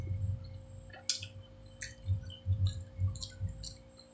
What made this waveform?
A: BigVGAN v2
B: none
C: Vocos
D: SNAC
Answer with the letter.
B